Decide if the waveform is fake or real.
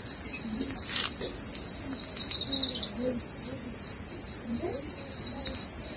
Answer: real